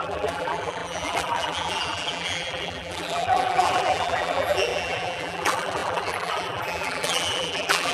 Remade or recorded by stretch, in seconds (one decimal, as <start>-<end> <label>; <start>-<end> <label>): 0.0-7.9 remade